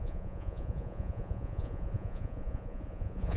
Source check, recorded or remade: remade